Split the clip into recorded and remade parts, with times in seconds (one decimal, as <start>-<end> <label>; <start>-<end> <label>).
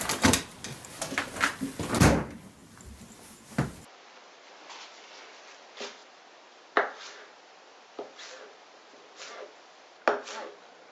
0.0-10.9 recorded